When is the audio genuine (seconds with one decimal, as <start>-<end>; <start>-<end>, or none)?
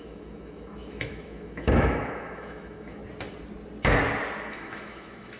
3.0-4.5